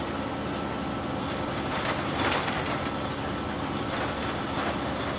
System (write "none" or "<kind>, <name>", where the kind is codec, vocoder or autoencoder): none